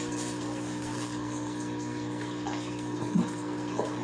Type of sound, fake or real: fake